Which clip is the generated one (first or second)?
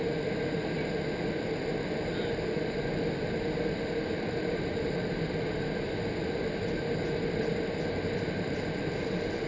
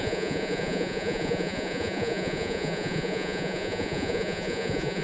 second